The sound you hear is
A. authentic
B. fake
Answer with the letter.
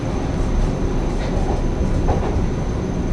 A